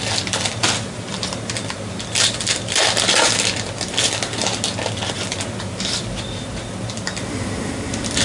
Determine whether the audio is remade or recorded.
recorded